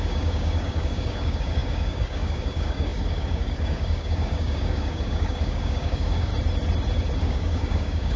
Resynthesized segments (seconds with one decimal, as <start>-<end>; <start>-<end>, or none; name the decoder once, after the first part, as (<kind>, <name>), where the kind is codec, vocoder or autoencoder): 0.0-6.3 (codec, DAC); 7.2-8.2